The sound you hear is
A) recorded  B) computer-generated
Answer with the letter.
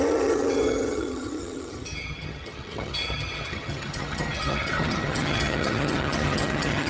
B